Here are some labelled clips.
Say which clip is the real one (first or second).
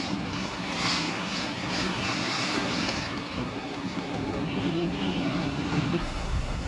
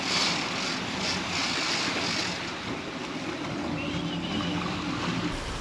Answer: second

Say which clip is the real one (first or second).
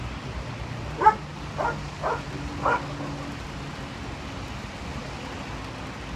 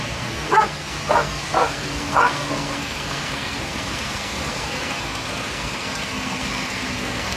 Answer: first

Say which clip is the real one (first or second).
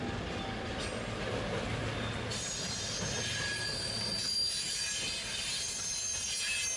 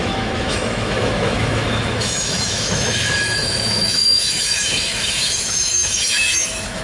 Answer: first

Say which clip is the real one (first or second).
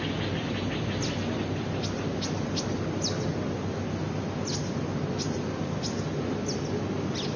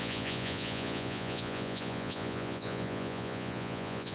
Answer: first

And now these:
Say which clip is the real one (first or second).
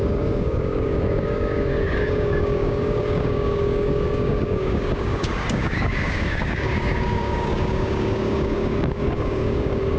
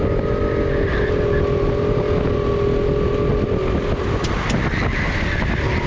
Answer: second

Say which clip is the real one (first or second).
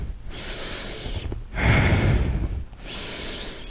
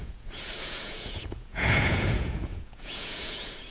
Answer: first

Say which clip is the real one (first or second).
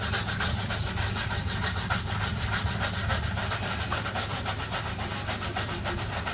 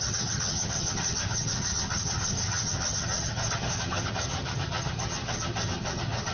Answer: first